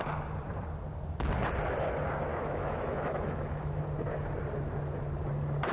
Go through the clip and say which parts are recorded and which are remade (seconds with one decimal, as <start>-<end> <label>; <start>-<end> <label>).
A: 0.0-2.3 recorded; 2.3-3.8 remade; 3.8-5.7 recorded